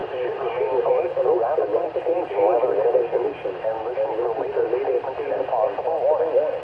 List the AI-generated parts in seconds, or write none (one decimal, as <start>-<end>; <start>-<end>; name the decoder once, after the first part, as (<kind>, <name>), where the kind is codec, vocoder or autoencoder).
0.0-1.1 (vocoder, BigVGAN v2); 3.8-4.5